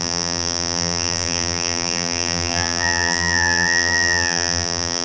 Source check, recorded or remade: remade